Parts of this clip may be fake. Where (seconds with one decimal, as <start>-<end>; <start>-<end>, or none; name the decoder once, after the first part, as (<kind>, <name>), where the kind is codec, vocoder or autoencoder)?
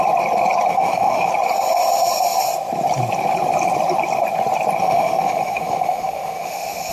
0.7-1.3 (autoencoder, DAC-VAE); 4.8-6.9